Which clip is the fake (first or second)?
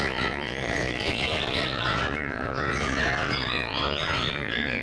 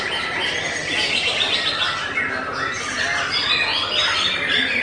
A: first